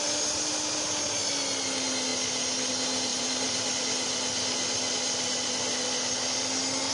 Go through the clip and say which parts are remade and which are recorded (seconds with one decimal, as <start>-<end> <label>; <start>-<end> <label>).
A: 0.0-3.1 recorded; 3.1-3.7 remade; 3.7-6.9 recorded